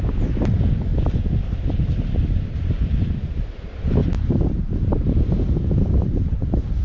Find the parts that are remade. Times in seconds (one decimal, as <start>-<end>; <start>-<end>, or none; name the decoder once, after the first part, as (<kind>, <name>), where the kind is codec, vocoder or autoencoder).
0.9-3.5 (vocoder, BigVGAN v2); 4.0-6.2